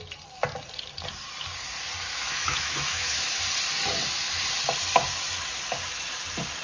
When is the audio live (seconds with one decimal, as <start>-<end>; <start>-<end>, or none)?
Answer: 0.0-2.1; 3.4-6.6